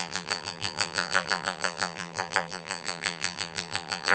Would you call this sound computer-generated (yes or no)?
yes